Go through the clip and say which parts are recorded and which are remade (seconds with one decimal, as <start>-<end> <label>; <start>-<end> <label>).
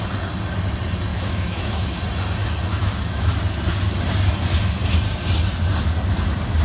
0.0-1.1 recorded; 1.1-2.0 remade; 2.0-2.7 recorded; 2.7-3.3 remade; 3.3-6.6 recorded